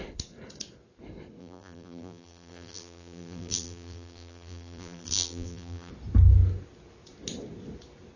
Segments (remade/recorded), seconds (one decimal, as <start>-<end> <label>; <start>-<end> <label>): 0.0-1.4 recorded; 1.4-5.9 remade; 5.9-8.2 recorded